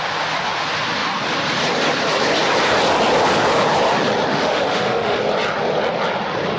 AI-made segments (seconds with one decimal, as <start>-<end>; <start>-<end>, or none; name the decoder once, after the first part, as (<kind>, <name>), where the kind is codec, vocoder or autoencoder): 4.3-5.2 (autoencoder, DAC-VAE)